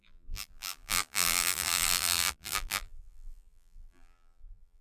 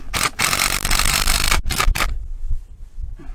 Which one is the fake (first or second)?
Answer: first